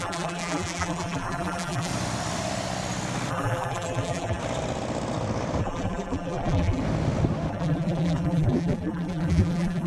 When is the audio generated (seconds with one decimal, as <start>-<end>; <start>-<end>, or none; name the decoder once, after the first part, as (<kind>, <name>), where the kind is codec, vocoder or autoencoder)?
0.0-1.9 (vocoder, BigVGAN v2); 3.3-4.4; 5.6-6.8; 7.5-9.9